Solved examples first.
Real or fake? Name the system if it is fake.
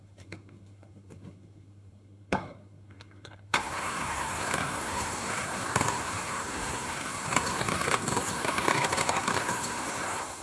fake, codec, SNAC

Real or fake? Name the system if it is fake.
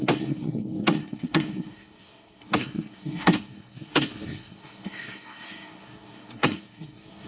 fake, codec, SNAC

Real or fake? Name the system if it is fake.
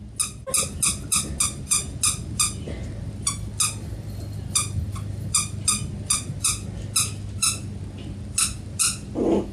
real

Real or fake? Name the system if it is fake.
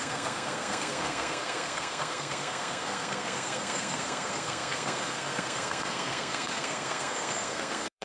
fake, codec, SNAC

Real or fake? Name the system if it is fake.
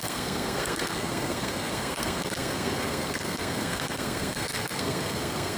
fake, codec, SNAC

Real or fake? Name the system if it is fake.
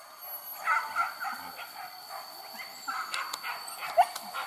real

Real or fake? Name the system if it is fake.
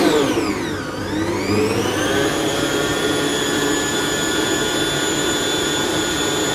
real